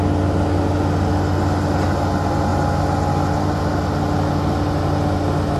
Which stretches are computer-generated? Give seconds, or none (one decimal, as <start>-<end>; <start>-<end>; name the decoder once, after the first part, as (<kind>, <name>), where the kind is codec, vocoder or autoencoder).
none